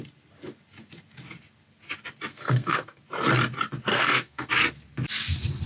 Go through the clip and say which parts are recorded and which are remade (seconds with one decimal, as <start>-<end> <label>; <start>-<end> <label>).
0.0-2.3 recorded; 2.3-3.0 remade; 3.0-3.9 recorded; 3.9-4.5 remade; 4.5-5.7 recorded